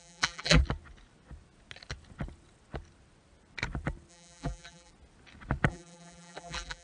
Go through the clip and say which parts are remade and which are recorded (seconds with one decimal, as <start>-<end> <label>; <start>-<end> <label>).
0.0-0.6 remade; 0.6-4.1 recorded; 4.1-4.9 remade; 4.9-5.7 recorded; 5.7-6.8 remade